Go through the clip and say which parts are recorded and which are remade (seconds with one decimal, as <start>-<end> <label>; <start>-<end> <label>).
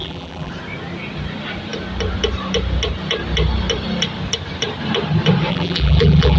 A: 0.0-0.5 remade; 0.5-5.5 recorded; 5.5-6.4 remade